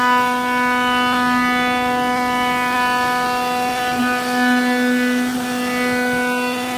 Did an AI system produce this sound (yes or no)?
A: no